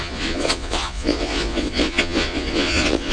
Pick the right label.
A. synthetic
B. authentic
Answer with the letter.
A